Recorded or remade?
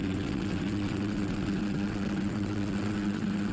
remade